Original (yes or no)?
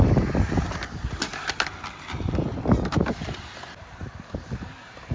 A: yes